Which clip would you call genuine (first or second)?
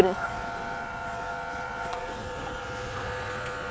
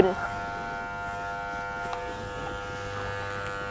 second